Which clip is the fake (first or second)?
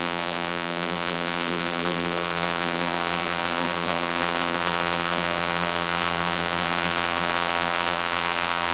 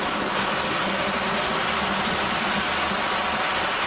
first